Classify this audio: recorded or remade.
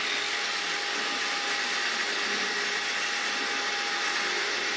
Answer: recorded